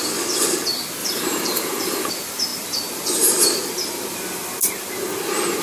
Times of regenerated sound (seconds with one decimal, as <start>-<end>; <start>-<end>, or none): 1.0-2.1